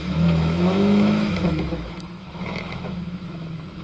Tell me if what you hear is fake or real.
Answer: fake